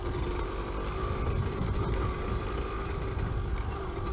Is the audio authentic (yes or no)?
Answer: yes